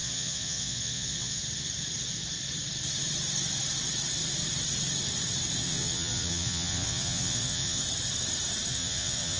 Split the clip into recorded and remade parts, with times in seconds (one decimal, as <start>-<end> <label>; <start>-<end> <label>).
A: 0.0-1.4 remade; 1.4-5.6 recorded; 5.6-7.8 remade; 7.8-8.7 recorded; 8.7-9.4 remade